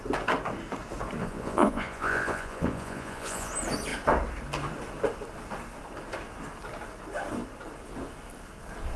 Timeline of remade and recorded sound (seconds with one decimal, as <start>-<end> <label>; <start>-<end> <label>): 0.0-1.2 recorded; 1.2-3.5 remade; 3.5-9.0 recorded